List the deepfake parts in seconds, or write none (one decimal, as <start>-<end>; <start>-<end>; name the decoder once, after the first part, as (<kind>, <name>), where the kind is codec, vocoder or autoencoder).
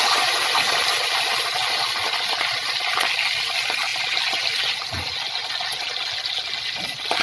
none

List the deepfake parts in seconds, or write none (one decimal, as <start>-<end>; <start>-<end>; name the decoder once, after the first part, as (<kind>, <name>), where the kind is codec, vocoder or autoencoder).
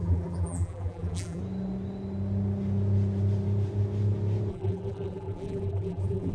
0.0-1.4 (vocoder, BigVGAN v2); 4.5-6.3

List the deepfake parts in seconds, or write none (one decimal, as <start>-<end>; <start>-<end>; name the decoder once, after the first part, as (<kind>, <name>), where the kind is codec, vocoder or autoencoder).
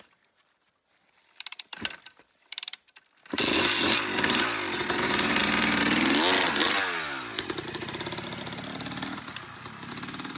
none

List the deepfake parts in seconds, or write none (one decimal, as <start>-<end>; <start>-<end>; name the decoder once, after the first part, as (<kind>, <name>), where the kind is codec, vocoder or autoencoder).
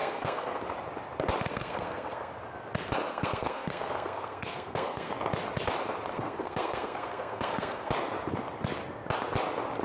0.0-0.6 (codec, SNAC); 1.5-2.3; 3.1-5.1; 6.1-7.9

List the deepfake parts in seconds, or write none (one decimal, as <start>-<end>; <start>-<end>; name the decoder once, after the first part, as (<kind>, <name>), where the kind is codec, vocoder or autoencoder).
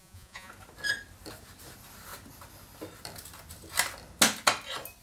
0.0-0.5 (vocoder, Vocos)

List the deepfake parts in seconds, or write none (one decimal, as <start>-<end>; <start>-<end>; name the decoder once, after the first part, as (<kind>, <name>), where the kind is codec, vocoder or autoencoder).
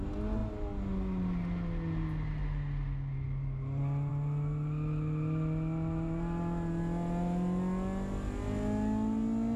none